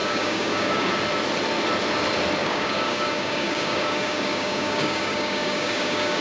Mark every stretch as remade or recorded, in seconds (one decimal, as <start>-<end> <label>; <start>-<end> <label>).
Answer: 0.0-0.9 remade; 0.9-2.4 recorded; 2.4-6.2 remade